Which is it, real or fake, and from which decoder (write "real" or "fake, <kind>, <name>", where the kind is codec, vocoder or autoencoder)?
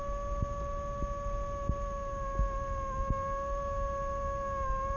real